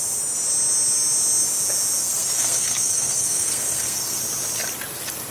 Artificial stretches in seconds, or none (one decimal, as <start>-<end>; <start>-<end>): 2.0-4.2